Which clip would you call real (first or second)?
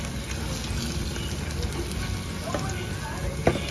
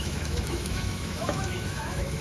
first